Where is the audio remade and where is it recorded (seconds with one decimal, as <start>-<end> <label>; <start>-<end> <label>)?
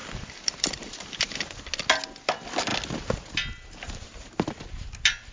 0.0-1.6 remade; 1.6-5.3 recorded